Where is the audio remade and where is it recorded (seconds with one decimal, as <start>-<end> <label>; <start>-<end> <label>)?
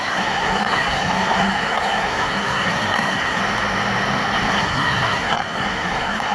0.0-3.4 remade; 3.4-4.5 recorded; 4.5-6.3 remade